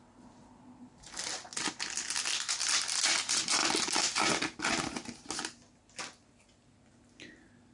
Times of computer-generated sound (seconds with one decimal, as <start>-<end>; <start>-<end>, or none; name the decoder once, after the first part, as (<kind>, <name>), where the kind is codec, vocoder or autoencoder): none